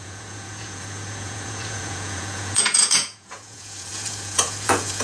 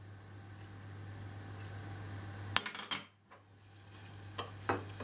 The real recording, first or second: second